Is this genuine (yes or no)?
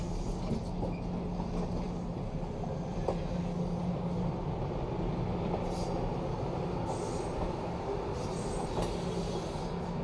yes